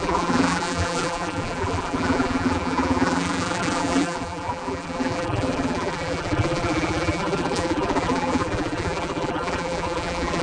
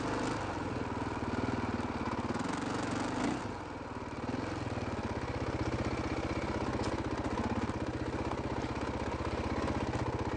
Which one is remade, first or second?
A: first